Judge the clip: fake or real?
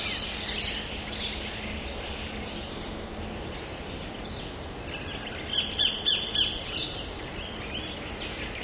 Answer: real